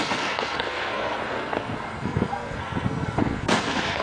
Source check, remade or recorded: remade